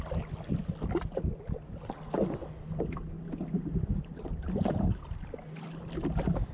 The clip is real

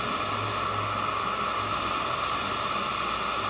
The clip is real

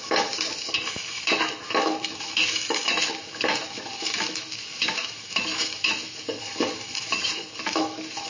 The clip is fake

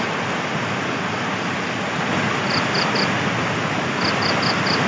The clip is real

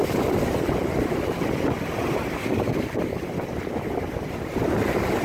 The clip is real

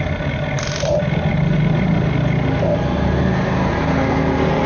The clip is real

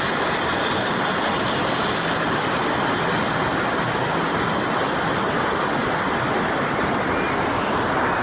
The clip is real